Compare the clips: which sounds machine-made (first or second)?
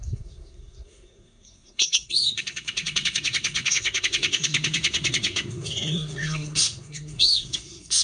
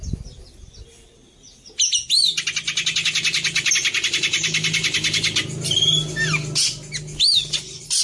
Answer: first